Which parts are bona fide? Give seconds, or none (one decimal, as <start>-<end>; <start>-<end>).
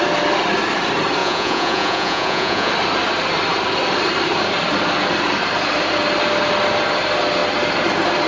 0.0-1.2; 2.7-8.3